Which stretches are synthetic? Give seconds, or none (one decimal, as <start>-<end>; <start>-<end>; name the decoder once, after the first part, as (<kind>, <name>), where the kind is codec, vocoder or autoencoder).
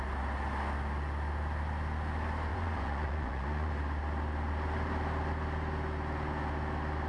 2.5-3.7 (vocoder, Vocos)